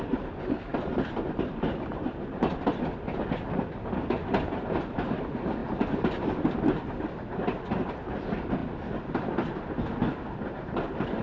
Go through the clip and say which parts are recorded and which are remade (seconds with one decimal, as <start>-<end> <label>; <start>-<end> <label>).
0.0-11.2 recorded